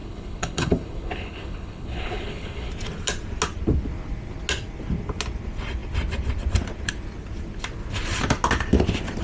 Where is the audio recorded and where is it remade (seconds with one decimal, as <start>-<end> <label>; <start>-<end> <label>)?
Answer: 0.0-2.7 remade; 2.7-9.2 recorded